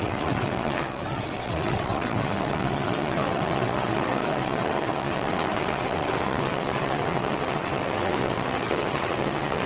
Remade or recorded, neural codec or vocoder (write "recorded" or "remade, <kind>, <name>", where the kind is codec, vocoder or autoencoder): remade, vocoder, WaveNeXt